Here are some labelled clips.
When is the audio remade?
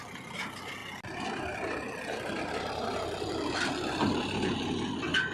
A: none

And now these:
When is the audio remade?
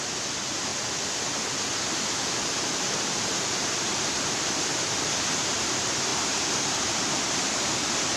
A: 0.0-0.7 (vocoder, BigVGAN v2); 2.4-8.2